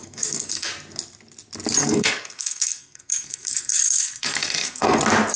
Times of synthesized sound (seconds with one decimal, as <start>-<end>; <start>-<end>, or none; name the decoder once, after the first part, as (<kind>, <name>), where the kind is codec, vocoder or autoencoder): 0.0-0.7 (codec, SNAC); 1.8-5.0